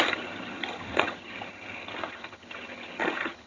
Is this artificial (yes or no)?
yes